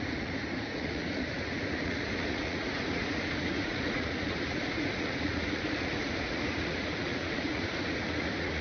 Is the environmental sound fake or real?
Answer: fake